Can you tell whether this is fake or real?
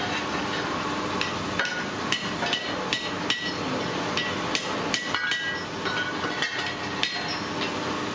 real